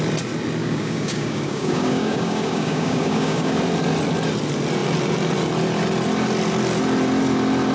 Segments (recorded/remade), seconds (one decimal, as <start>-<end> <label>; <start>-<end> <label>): 0.0-0.6 recorded; 0.6-3.6 remade; 3.6-7.7 recorded